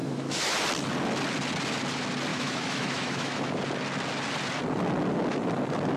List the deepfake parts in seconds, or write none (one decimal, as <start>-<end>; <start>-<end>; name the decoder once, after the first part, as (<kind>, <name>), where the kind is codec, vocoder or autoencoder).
0.0-0.6 (autoencoder, DAC-VAE); 2.3-3.6